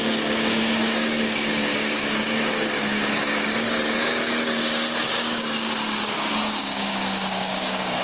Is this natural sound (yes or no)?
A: no